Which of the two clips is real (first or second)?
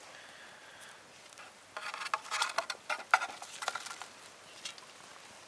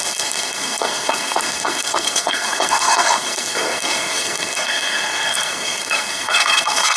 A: first